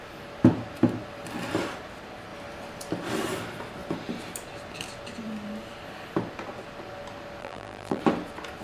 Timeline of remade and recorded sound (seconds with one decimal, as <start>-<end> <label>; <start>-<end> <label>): 0.0-7.4 recorded; 7.4-8.0 remade; 8.0-8.6 recorded